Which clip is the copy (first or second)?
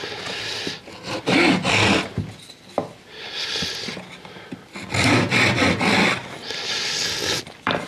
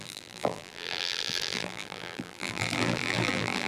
second